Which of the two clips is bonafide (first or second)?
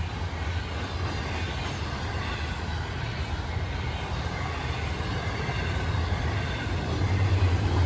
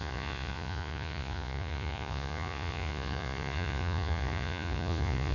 first